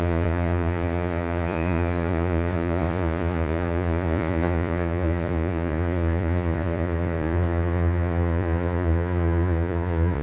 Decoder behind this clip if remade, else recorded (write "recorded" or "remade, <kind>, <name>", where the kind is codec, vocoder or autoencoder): remade, vocoder, Vocos